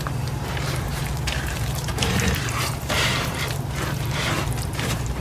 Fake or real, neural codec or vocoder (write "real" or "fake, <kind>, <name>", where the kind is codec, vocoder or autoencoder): fake, vocoder, BigVGAN v2